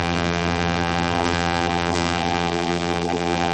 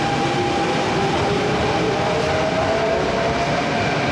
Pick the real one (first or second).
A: second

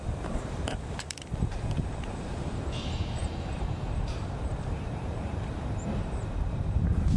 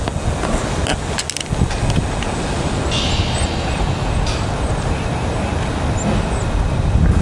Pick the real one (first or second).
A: second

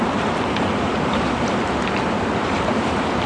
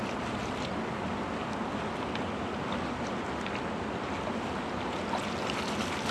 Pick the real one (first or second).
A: second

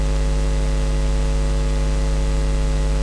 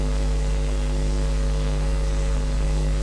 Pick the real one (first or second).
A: first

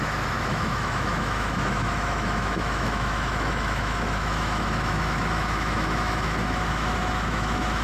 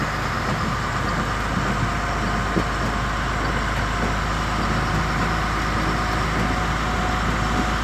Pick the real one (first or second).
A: second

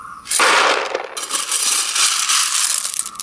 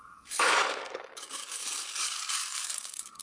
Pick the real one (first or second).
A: first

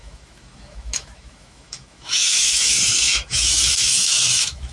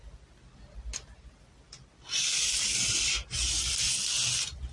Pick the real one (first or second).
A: second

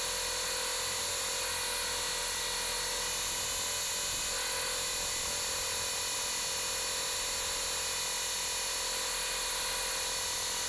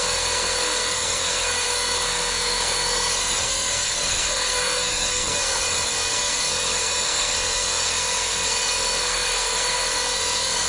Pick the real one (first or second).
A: first